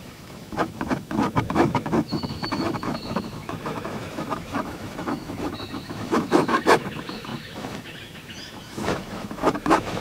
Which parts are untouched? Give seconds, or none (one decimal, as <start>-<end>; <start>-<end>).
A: none